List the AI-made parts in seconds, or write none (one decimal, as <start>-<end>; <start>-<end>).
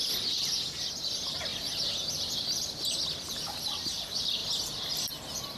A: none